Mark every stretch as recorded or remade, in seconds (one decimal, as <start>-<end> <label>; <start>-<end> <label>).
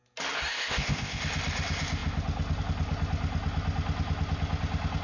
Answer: 0.0-0.5 recorded; 0.5-1.2 remade; 1.2-5.0 recorded